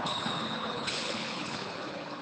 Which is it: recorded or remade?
remade